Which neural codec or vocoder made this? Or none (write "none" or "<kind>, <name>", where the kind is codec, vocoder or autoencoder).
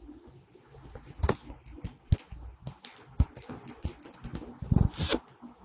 none